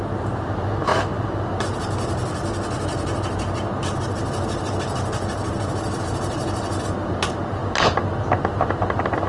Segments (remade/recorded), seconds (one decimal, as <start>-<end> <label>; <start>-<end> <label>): 0.0-9.3 recorded